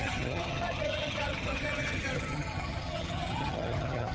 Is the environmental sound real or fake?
fake